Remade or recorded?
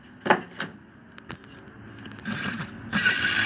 recorded